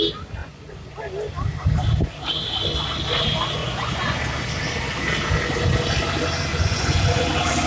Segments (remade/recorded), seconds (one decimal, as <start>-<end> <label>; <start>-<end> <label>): 0.0-0.4 recorded; 0.4-0.9 remade; 0.9-3.6 recorded; 3.6-4.2 remade; 4.2-6.5 recorded; 6.5-7.3 remade; 7.3-7.7 recorded

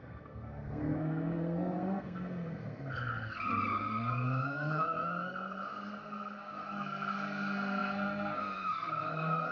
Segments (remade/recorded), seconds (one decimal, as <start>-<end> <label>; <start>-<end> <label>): 0.0-9.5 remade

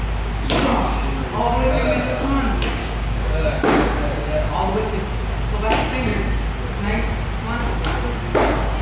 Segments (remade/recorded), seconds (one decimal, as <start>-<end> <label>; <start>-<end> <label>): 0.0-2.8 recorded; 2.8-4.5 remade; 4.5-8.8 recorded

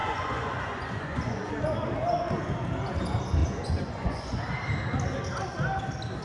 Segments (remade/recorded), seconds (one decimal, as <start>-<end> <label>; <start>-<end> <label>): 0.0-1.5 remade; 1.5-3.4 recorded; 3.4-4.5 remade; 4.5-6.2 recorded

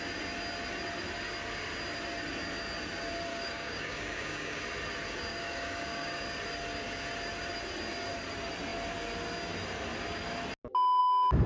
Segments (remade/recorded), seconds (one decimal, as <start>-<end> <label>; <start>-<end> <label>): 0.0-3.3 recorded; 3.3-4.6 remade; 4.6-5.3 recorded; 5.3-6.2 remade; 6.2-11.5 recorded

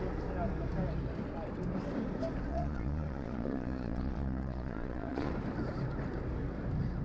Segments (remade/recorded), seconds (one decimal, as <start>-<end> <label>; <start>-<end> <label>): 0.0-2.5 recorded; 2.5-5.3 remade; 5.3-7.0 recorded

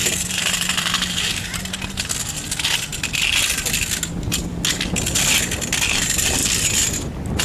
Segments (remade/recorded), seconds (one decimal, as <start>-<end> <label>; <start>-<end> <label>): 0.0-1.6 remade; 1.6-7.4 recorded